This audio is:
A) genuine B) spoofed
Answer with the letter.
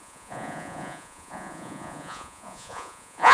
B